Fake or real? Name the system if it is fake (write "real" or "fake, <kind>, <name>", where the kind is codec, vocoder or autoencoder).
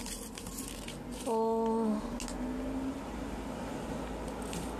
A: real